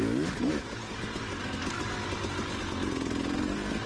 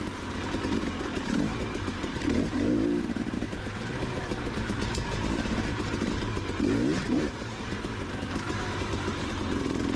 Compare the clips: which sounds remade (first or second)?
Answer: second